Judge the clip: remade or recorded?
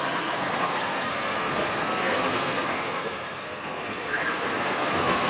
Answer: remade